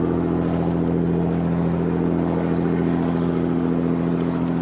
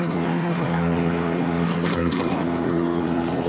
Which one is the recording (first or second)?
first